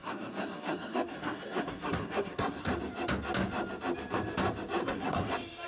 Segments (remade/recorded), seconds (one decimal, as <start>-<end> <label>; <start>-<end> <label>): 0.0-2.7 remade; 2.7-4.8 recorded; 4.8-5.3 remade; 5.3-5.7 recorded